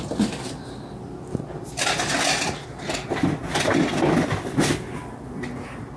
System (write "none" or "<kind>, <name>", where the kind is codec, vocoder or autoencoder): none